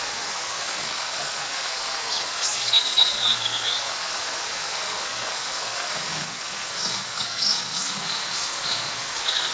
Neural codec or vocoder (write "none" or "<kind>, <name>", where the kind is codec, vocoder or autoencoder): codec, SNAC